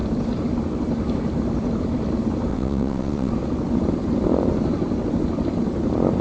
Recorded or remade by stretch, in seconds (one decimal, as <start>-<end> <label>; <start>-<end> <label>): 0.0-2.5 recorded; 2.5-3.3 remade; 3.3-6.2 recorded